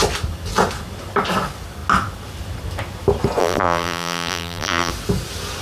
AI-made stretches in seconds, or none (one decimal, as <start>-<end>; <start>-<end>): 3.4-4.9